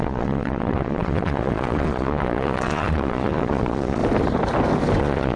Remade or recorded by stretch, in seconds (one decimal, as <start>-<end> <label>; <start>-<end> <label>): 0.0-4.0 remade; 4.0-5.0 recorded; 5.0-5.4 remade